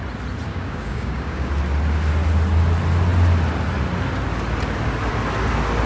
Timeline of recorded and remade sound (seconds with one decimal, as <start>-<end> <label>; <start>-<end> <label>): 0.0-0.5 recorded; 0.5-1.5 remade; 1.5-5.9 recorded